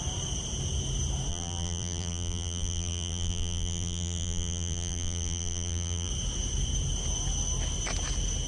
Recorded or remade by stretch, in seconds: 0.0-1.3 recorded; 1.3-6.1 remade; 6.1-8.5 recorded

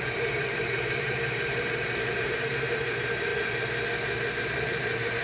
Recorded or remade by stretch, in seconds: 0.0-3.3 remade; 3.3-4.4 recorded; 4.4-5.2 remade

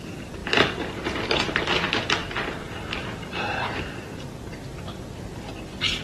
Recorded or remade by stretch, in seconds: 0.0-6.0 remade